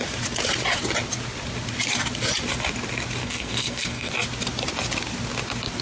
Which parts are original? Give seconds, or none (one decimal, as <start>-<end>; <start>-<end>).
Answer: 0.0-3.2; 4.1-5.8